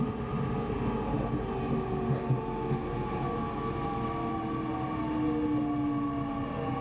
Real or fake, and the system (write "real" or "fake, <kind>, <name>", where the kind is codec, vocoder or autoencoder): real